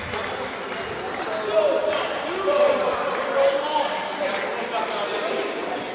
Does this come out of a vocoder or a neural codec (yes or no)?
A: no